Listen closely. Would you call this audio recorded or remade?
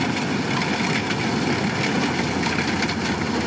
recorded